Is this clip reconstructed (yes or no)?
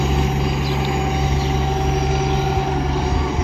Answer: no